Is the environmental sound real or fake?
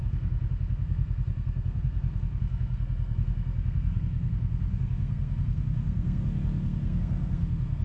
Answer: fake